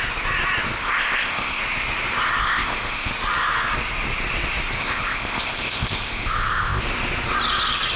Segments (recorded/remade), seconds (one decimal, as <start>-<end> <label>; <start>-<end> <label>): 0.0-0.8 recorded; 0.8-1.6 remade; 1.6-2.4 recorded; 2.4-3.1 remade; 3.1-4.8 recorded; 4.8-6.8 remade; 6.8-8.0 recorded